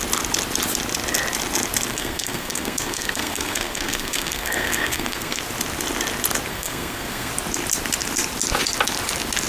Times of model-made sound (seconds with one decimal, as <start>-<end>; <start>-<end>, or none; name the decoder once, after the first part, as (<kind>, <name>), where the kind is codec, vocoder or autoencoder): 1.9-5.4 (codec, SNAC); 6.5-7.3